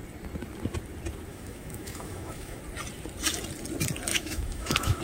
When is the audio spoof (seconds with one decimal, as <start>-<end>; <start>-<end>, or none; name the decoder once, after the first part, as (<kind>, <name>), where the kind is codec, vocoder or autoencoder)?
1.3-2.6 (autoencoder, DAC-VAE); 4.1-5.0